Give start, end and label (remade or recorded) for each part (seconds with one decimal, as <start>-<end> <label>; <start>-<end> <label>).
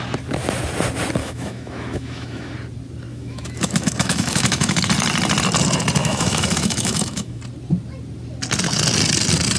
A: 0.0-1.2 recorded; 1.2-2.5 remade; 2.5-3.1 recorded; 3.1-4.8 remade; 4.8-6.0 recorded; 6.0-7.4 remade; 7.4-9.6 recorded